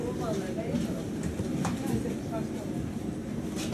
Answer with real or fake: real